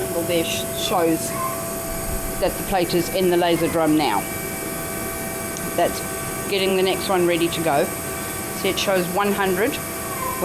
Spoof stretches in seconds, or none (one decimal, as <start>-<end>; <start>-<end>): none